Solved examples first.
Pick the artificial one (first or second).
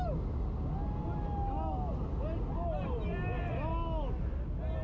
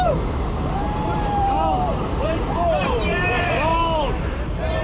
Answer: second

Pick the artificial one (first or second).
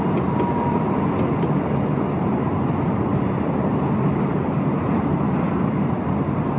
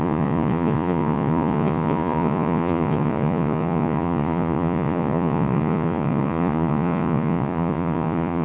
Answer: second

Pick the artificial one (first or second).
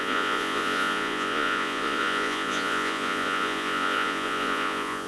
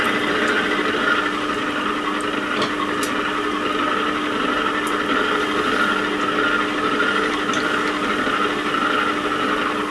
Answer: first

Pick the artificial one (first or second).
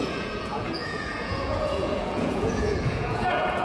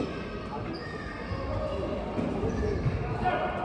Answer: first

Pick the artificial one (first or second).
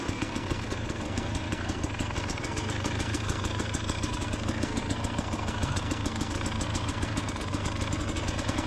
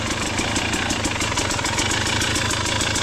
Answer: first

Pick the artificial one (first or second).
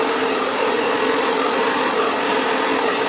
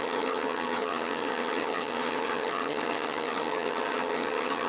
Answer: second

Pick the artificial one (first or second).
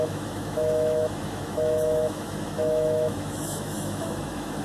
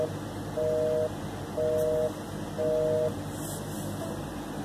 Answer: first